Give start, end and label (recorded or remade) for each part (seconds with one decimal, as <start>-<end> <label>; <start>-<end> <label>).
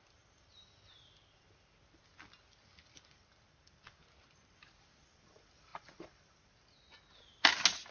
0.0-7.9 recorded